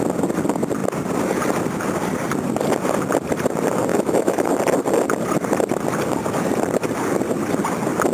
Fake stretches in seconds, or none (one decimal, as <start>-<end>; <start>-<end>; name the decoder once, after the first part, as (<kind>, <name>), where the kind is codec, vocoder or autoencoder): 3.9-4.5 (autoencoder, DAC-VAE)